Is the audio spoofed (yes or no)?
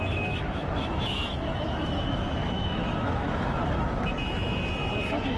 yes